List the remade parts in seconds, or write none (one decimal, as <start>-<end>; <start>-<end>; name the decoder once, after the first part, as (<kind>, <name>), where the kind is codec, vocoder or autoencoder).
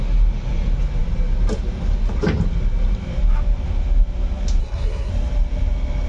4.6-5.1 (codec, SNAC)